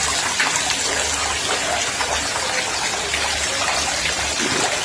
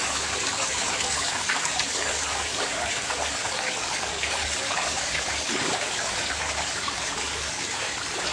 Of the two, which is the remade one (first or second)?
second